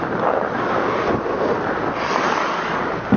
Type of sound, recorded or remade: recorded